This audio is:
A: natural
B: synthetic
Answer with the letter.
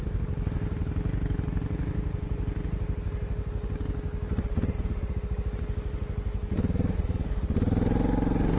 A